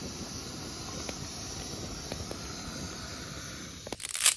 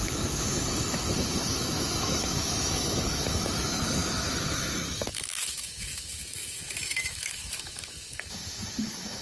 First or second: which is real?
first